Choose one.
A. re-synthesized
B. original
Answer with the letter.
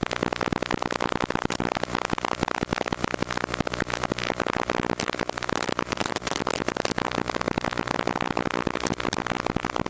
A